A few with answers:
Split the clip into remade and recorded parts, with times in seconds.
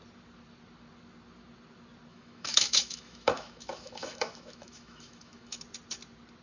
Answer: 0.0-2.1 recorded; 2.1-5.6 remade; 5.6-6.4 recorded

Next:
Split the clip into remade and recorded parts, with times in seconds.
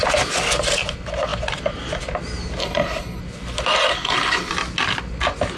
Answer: 0.0-2.6 recorded; 2.6-3.2 remade; 3.2-3.9 recorded; 3.9-4.5 remade; 4.5-5.6 recorded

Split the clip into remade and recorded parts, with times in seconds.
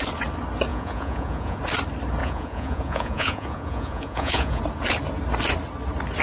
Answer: 0.0-0.7 recorded; 0.7-1.6 remade; 1.6-2.2 recorded; 2.2-4.6 remade; 4.6-6.2 recorded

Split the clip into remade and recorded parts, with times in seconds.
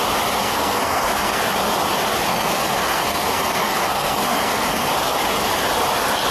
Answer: 0.0-0.4 recorded; 0.4-1.4 remade; 1.4-2.3 recorded; 2.3-4.9 remade; 4.9-6.3 recorded